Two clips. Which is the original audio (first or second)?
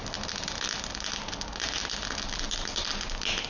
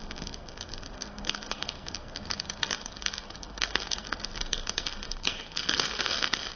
first